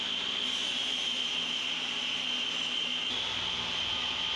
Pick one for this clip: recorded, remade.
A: recorded